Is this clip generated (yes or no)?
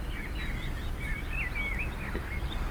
no